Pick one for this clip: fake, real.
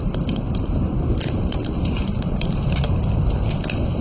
fake